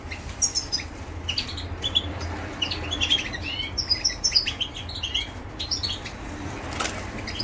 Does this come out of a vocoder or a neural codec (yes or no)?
no